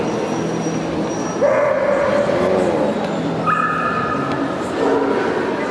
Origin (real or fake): real